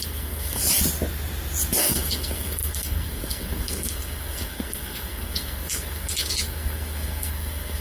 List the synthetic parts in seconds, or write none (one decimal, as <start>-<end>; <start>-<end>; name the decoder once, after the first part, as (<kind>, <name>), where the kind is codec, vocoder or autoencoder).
0.0-0.6 (codec, SNAC); 1.8-7.8